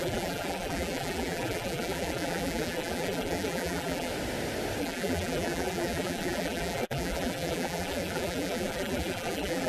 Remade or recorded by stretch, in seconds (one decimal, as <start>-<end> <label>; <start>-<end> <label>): 0.0-4.1 remade; 4.1-4.8 recorded; 4.8-9.7 remade